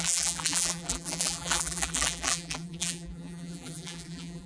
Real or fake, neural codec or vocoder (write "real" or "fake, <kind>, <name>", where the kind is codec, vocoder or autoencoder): fake, vocoder, BigVGAN v2